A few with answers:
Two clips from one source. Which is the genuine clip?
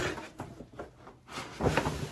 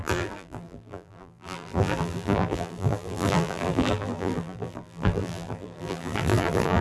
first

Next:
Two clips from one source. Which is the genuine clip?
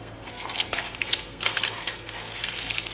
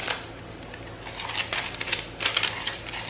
second